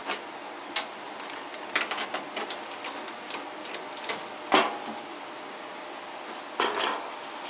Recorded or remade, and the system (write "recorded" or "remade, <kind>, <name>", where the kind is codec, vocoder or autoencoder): recorded